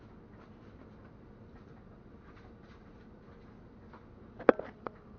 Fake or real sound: real